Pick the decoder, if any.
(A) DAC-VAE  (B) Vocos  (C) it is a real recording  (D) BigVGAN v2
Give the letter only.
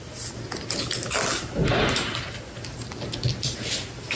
C